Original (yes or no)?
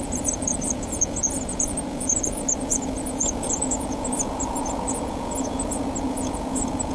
no